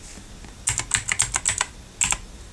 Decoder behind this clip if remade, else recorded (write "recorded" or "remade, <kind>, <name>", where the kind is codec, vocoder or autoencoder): recorded